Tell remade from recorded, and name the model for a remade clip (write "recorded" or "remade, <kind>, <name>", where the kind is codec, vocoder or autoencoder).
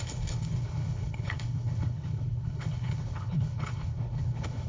remade, codec, HILCodec